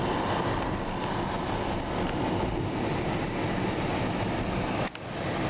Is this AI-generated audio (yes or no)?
no